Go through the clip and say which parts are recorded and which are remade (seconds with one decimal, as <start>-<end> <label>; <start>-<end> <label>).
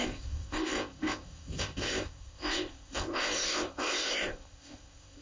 0.0-5.2 remade